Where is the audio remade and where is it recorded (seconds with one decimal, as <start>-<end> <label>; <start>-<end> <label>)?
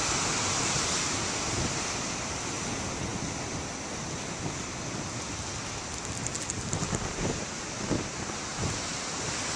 0.0-9.6 recorded